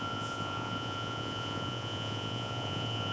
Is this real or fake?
fake